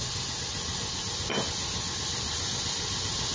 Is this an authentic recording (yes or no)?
yes